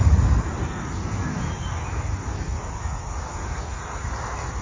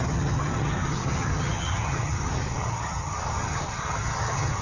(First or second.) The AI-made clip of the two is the second